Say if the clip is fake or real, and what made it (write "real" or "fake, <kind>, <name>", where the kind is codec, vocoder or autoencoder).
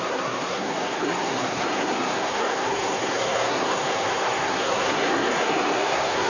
fake, codec, SNAC